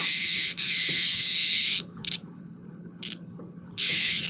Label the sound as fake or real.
fake